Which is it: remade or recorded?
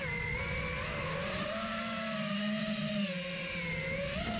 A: recorded